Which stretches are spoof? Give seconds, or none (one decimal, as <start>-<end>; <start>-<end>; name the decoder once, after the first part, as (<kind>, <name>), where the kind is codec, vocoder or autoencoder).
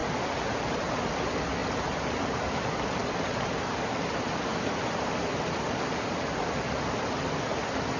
1.6-2.6 (vocoder, BigVGAN v2); 3.0-3.8